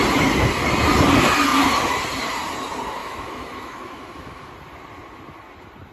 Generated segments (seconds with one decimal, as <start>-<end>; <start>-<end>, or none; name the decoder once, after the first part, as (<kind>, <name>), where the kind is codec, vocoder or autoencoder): 3.0-4.5 (autoencoder, DAC-VAE)